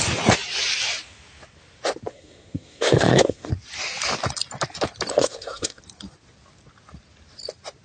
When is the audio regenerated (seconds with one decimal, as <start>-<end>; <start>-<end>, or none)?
2.1-3.5; 5.1-5.8